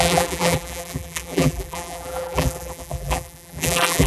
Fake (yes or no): yes